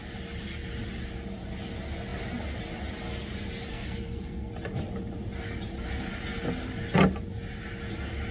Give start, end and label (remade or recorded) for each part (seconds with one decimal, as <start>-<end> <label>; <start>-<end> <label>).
0.0-3.7 recorded; 3.7-4.5 remade; 4.5-8.3 recorded